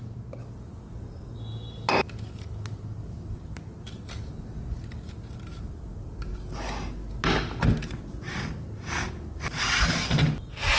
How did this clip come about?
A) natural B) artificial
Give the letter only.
A